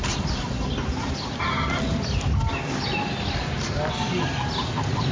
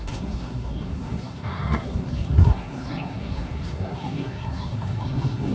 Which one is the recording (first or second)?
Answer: first